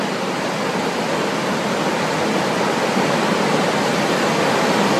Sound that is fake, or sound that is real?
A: real